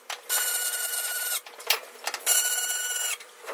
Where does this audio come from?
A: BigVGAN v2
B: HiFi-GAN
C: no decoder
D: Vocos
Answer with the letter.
A